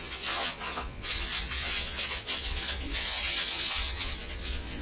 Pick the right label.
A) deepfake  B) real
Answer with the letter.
A